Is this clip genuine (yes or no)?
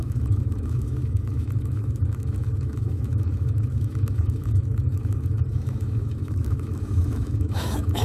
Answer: no